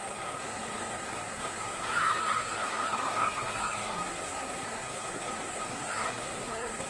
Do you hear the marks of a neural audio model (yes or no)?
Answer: yes